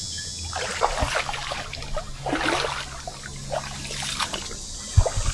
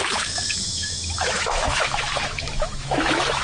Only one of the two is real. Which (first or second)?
first